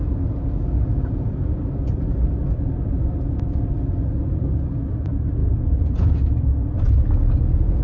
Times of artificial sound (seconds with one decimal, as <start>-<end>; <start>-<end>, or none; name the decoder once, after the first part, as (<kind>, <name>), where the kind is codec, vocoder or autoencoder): 0.9-1.6 (vocoder, Vocos); 5.4-7.8